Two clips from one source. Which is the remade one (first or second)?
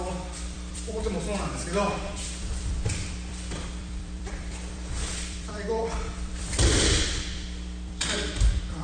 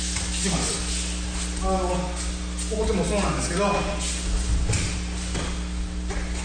first